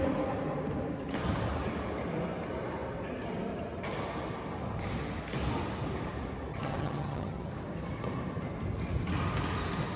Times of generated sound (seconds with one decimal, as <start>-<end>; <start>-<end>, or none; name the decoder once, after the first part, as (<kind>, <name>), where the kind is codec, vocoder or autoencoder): 6.5-7.5 (vocoder, HiFi-GAN)